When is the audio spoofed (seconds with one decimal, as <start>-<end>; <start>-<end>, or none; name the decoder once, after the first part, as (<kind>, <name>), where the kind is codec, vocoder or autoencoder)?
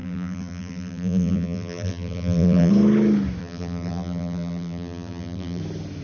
0.0-2.7 (vocoder, BigVGAN v2); 3.4-5.6